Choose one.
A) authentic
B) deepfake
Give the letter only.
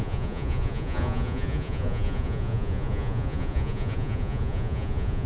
B